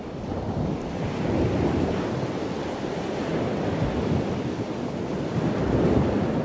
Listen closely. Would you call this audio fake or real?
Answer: real